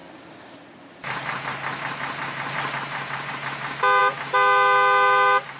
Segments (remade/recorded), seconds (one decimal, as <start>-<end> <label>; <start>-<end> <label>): 0.0-5.6 recorded